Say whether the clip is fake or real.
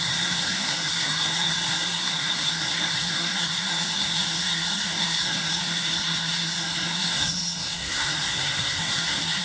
fake